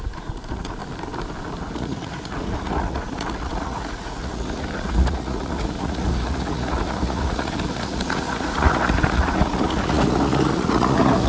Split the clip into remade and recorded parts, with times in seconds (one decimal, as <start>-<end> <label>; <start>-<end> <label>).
0.0-0.8 remade; 0.8-1.6 recorded; 1.6-11.3 remade